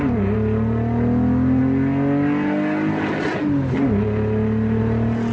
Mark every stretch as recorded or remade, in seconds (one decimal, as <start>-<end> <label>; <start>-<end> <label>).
0.0-5.3 recorded